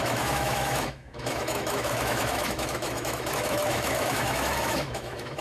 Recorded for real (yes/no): no